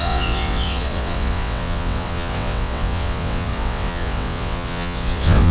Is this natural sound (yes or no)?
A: no